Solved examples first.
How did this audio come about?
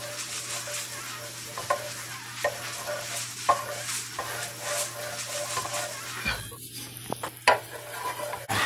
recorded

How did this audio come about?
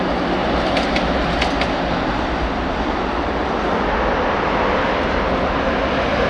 recorded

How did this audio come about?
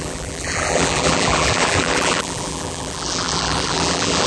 remade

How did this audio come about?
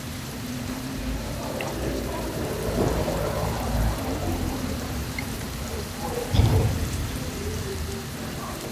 remade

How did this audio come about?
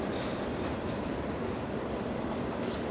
remade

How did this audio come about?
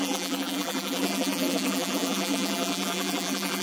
remade